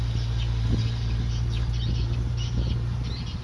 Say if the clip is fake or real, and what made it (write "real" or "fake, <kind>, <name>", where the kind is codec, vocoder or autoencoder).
real